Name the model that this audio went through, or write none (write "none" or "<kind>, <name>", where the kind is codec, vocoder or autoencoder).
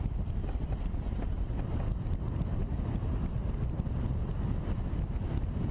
none